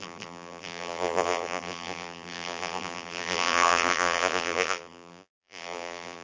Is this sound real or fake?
fake